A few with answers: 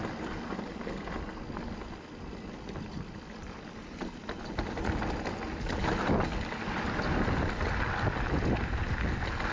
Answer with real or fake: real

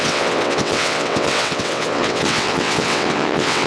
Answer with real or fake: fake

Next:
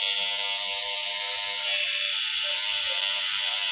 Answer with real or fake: real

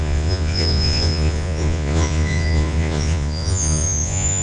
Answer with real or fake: fake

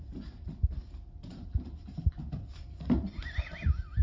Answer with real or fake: real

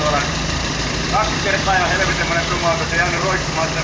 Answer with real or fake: real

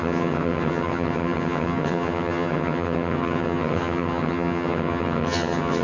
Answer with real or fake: fake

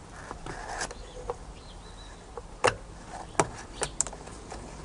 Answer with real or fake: real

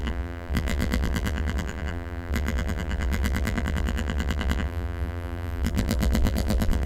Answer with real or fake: fake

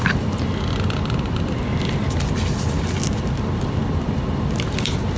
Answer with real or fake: real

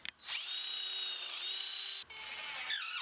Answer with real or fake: real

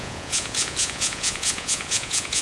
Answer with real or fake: fake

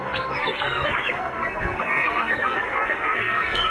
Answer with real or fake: fake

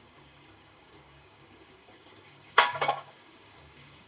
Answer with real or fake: fake